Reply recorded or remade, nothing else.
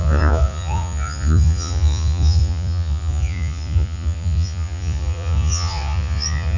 remade